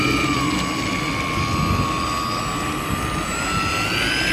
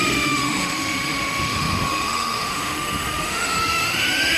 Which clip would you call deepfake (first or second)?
second